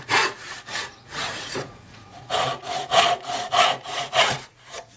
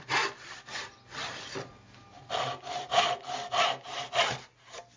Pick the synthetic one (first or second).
first